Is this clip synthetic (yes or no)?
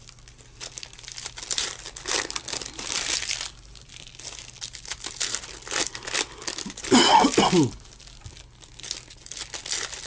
no